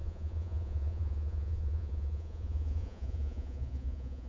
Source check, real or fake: fake